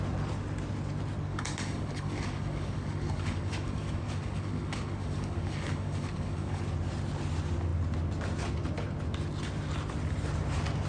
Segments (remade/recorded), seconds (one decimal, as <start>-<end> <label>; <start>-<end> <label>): 0.0-1.3 recorded; 1.3-6.6 remade; 6.6-10.9 recorded